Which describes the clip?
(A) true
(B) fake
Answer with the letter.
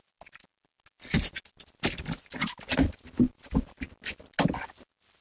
A